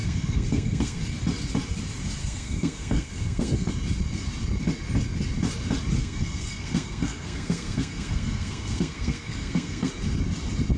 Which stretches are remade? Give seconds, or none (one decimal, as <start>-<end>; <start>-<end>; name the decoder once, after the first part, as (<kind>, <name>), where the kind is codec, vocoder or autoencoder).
0.0-1.0 (codec, SNAC); 2.2-3.7; 6.0-9.9